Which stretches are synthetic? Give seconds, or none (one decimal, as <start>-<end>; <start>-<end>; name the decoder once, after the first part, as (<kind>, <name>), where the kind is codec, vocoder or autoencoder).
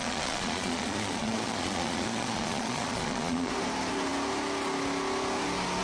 0.0-3.5 (vocoder, Vocos)